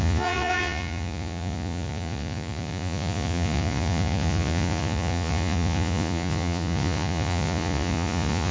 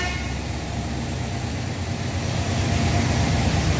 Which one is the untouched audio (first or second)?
second